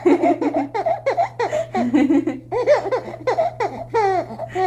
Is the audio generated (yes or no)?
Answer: no